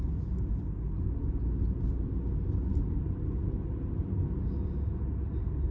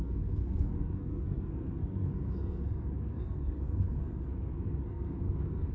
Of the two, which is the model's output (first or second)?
second